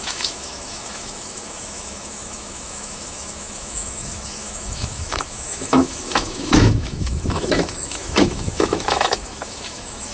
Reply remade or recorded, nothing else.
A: remade